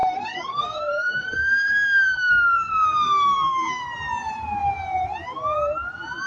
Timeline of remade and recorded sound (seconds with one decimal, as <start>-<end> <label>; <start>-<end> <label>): 0.0-3.8 remade; 3.8-6.3 recorded